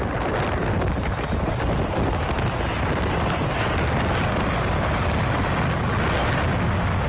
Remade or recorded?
recorded